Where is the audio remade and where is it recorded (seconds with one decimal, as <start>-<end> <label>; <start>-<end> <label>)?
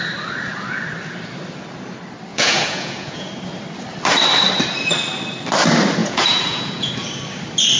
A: 0.0-2.3 recorded; 2.3-3.3 remade; 3.3-6.0 recorded; 6.0-6.9 remade; 6.9-7.8 recorded